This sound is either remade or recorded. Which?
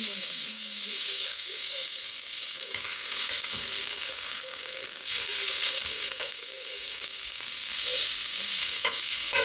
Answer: remade